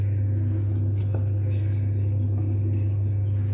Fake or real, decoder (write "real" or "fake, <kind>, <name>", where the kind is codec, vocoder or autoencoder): real